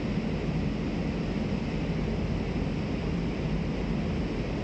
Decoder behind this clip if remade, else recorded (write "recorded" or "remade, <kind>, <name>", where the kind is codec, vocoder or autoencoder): recorded